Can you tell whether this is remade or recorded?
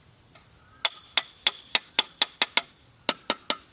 recorded